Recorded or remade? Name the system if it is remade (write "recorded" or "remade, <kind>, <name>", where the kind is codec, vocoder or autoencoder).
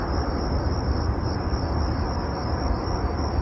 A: remade, vocoder, BigVGAN v2